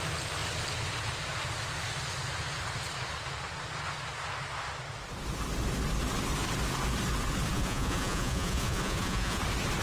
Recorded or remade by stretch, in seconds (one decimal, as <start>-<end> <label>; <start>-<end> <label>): 0.0-7.5 recorded; 7.5-9.4 remade; 9.4-9.8 recorded